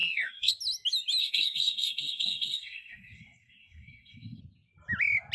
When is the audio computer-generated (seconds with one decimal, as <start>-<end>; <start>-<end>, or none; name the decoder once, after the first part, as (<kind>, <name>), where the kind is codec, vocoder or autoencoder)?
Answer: 0.0-0.5 (codec, SNAC); 1.2-4.4